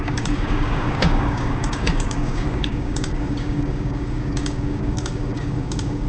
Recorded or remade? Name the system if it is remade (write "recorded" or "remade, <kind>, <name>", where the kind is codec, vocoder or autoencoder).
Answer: remade, codec, DAC